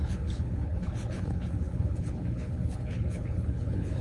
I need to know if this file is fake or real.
fake